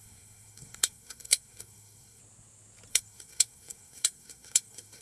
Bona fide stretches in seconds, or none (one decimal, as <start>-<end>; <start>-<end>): 2.2-2.9